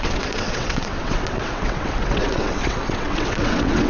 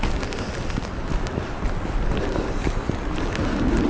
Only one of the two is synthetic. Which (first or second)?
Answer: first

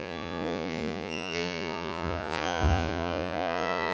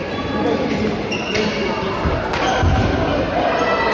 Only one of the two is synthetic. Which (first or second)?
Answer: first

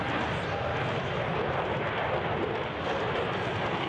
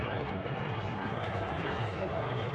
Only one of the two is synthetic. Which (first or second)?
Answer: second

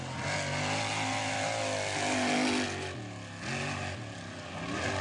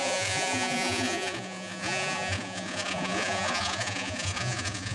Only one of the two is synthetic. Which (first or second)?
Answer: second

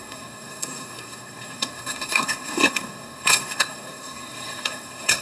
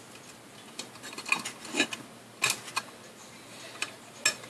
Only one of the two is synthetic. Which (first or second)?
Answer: first